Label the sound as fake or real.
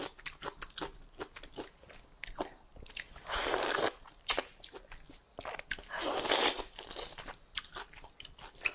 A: real